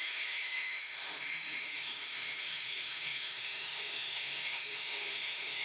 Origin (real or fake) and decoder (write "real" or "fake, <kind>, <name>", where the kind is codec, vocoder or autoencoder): fake, autoencoder, DAC-VAE